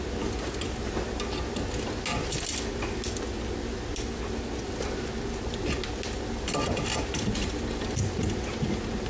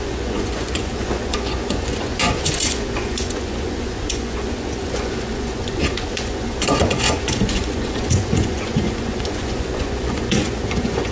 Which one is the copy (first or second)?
second